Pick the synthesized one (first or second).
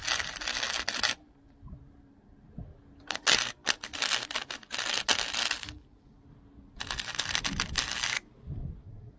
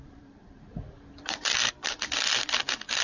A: second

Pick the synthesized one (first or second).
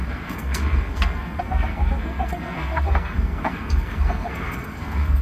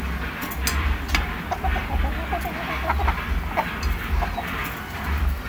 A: first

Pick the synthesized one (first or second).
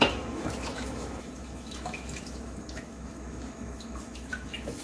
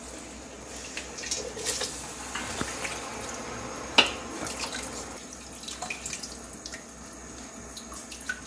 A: first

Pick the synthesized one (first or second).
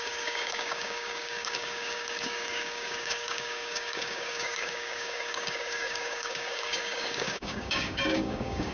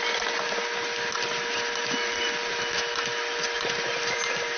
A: first